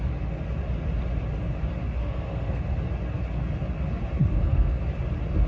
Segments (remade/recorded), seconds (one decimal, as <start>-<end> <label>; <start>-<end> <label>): 0.0-2.0 recorded; 2.0-2.6 remade; 2.6-4.2 recorded; 4.2-4.8 remade; 4.8-5.5 recorded